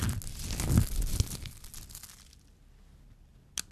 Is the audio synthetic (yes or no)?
no